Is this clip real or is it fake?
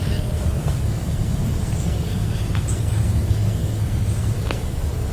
fake